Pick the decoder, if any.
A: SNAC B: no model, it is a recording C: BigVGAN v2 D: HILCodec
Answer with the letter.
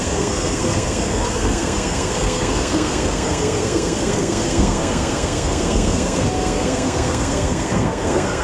A